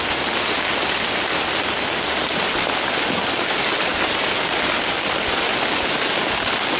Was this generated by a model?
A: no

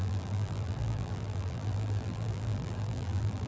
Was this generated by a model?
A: yes